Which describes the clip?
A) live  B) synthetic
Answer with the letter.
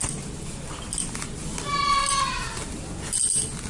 A